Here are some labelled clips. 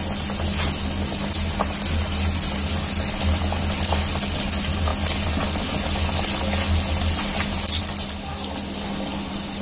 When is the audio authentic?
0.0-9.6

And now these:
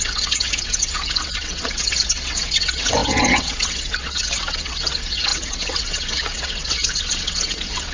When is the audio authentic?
none

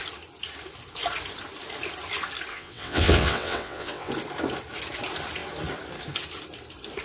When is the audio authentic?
0.0-2.5; 4.1-7.0